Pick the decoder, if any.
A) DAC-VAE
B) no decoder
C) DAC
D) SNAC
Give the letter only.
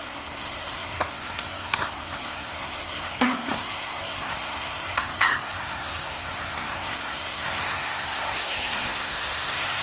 D